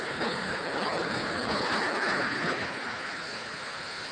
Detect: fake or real fake